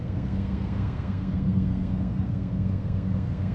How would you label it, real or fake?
fake